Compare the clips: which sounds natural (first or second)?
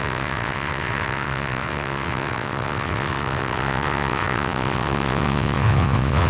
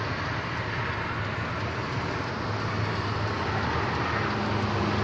second